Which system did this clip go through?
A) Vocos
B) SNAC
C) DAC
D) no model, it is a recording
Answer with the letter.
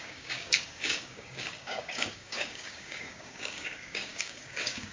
C